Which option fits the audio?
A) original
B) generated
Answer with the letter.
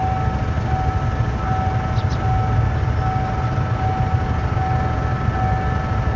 A